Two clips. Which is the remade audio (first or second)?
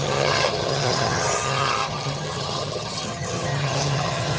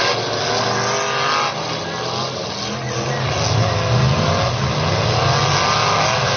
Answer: first